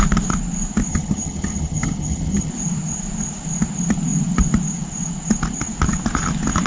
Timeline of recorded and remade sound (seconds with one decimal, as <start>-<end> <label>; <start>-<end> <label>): 0.0-0.9 recorded; 0.9-2.5 remade; 2.5-6.7 recorded